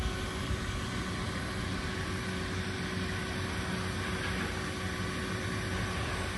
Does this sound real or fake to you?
real